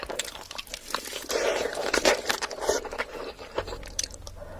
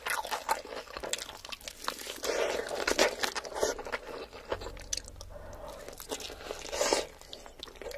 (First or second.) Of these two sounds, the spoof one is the first